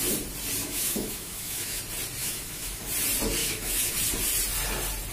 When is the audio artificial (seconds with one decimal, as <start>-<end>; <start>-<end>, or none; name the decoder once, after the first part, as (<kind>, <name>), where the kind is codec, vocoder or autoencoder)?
0.6-1.8 (autoencoder, DAC-VAE); 2.2-2.8; 3.4-3.9